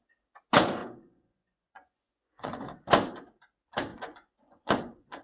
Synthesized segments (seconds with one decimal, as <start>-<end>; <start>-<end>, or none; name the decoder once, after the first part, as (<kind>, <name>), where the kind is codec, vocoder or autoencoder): 0.8-2.7 (vocoder, Vocos); 3.9-5.2